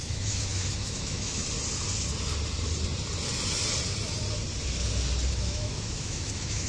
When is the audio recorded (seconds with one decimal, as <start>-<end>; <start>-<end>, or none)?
1.4-5.4